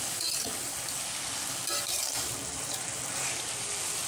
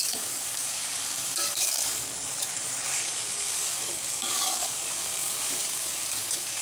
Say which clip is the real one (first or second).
first